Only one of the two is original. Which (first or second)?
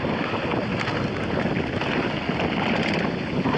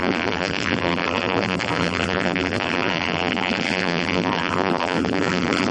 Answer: first